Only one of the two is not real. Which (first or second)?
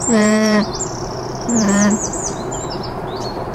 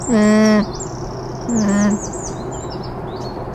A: first